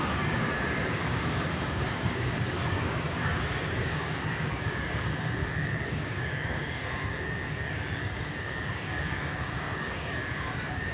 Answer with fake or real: fake